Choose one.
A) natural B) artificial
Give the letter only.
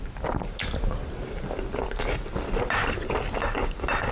A